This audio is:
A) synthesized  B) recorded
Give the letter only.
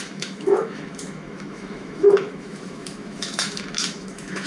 A